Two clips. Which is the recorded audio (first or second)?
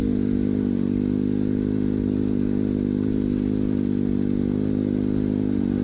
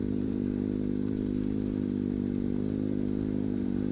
first